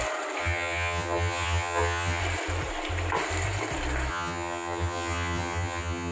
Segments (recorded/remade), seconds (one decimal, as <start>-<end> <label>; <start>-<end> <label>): 0.0-0.4 recorded; 0.4-2.2 remade; 2.2-4.1 recorded; 4.1-6.1 remade